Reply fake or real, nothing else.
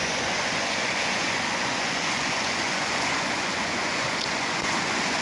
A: fake